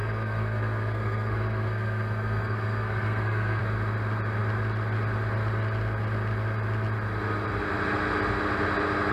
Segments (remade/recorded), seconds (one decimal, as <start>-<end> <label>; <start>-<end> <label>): 0.0-3.6 remade; 3.6-9.1 recorded